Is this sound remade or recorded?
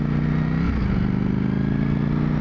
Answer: recorded